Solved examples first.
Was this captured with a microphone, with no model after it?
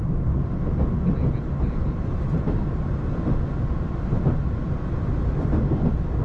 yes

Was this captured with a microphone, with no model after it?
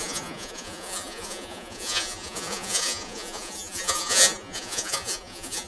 no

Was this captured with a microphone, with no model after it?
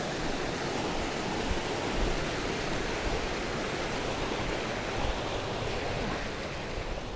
yes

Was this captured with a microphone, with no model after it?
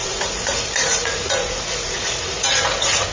no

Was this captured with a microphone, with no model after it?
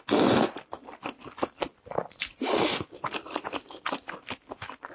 yes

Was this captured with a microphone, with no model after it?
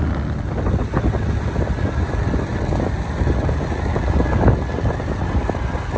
yes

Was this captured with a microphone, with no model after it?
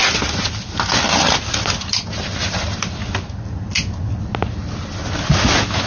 yes